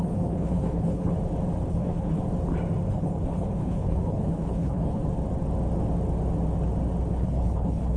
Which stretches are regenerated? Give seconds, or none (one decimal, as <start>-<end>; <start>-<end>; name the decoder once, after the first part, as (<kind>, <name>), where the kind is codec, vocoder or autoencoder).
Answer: 0.0-1.1 (codec, HILCodec); 1.7-2.2; 2.9-5.0; 7.1-8.0